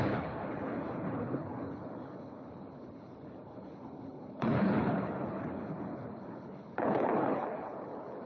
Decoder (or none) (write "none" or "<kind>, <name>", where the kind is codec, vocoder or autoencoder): codec, HILCodec